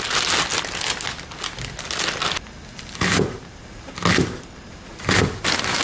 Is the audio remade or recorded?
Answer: recorded